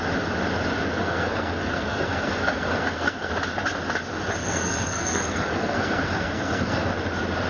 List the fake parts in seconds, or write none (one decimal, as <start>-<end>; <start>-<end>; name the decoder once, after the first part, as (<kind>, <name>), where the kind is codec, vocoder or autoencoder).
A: 1.0-3.3 (codec, SNAC); 4.4-6.9